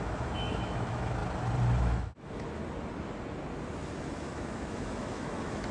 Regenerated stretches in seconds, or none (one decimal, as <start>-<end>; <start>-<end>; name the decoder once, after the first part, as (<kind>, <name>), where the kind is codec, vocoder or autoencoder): 0.0-1.2 (autoencoder, DAC-VAE); 1.8-2.6; 4.0-5.7